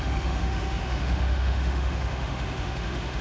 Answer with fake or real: fake